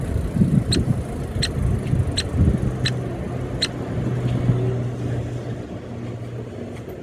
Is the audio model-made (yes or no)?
no